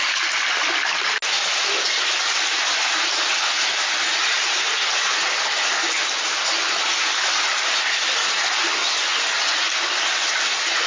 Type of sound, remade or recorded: recorded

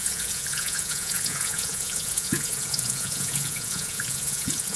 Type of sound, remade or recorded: remade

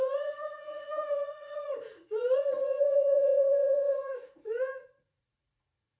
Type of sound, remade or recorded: remade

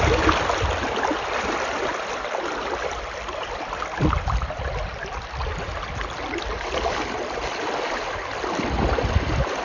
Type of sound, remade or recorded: recorded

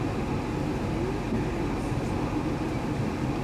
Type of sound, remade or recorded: recorded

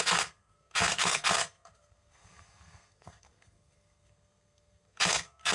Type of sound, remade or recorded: remade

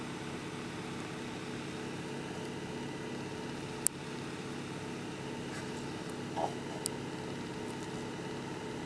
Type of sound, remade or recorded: recorded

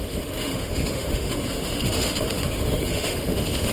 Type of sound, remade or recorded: remade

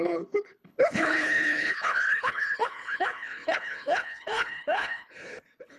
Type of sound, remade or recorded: remade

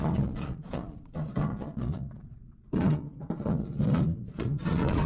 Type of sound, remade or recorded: remade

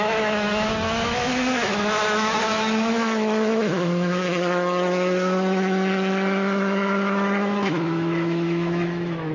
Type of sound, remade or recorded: remade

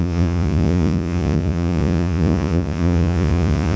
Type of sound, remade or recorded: remade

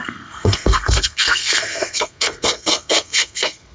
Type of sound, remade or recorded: remade